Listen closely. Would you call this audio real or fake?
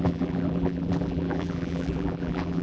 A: fake